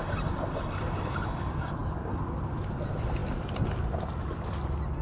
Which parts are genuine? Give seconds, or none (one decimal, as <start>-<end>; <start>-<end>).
0.0-5.0